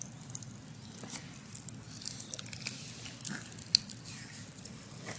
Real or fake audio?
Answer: real